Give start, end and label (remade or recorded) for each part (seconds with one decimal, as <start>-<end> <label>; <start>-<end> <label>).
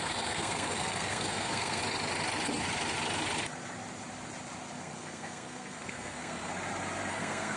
0.0-1.8 remade; 1.8-4.8 recorded; 4.8-6.5 remade; 6.5-7.1 recorded; 7.1-7.6 remade